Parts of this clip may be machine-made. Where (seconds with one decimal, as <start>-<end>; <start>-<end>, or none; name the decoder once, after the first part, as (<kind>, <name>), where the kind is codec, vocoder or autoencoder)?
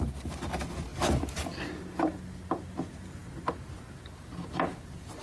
none